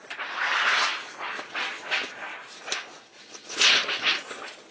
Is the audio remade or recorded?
recorded